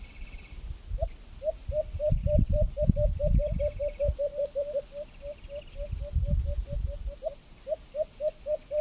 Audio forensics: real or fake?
real